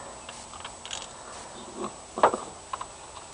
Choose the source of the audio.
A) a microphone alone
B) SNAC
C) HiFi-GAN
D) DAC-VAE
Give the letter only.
A